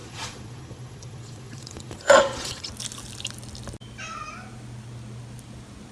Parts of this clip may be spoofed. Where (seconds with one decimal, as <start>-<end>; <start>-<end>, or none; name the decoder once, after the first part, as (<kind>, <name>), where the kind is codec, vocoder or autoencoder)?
0.0-2.7 (vocoder, Vocos)